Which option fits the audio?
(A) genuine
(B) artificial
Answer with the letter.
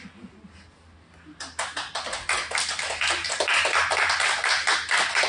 A